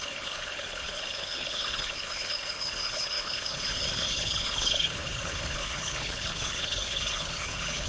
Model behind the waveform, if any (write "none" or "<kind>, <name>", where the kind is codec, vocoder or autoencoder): codec, HILCodec